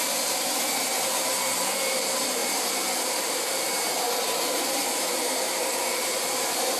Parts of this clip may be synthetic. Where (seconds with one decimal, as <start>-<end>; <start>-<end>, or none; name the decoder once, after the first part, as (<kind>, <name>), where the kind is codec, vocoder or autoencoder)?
0.0-6.8 (vocoder, BigVGAN v2)